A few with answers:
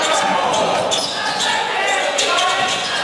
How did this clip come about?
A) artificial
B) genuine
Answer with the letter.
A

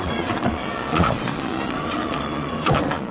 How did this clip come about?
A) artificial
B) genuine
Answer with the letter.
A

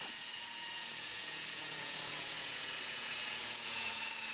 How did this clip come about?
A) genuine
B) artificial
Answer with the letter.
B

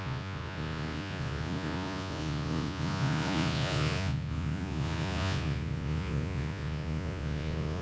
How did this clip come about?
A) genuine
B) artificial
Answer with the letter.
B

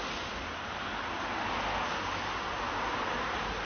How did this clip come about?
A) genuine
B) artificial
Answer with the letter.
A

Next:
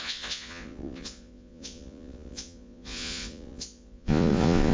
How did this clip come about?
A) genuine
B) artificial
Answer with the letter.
B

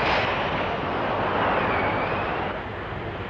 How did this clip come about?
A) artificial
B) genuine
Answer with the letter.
B